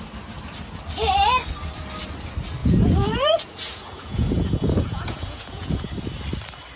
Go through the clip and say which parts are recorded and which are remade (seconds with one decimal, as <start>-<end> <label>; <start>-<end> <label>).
0.0-2.6 recorded; 2.6-5.9 remade; 5.9-6.8 recorded